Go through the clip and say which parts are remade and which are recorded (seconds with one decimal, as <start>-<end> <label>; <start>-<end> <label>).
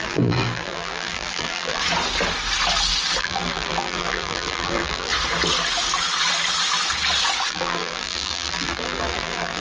0.0-1.8 remade; 1.8-3.2 recorded; 3.2-5.1 remade; 5.1-7.5 recorded; 7.5-9.6 remade